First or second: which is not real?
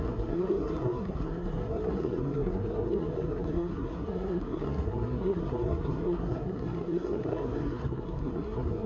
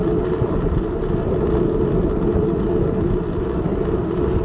first